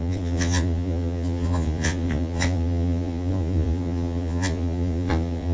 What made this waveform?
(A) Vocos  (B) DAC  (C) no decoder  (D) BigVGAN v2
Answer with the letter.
A